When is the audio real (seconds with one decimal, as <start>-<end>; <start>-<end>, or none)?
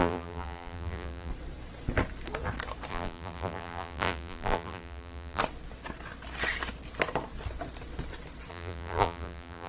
1.3-2.9; 5.4-8.5